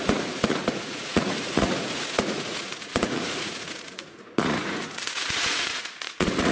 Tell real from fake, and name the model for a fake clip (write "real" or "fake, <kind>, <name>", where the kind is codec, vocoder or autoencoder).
fake, vocoder, Vocos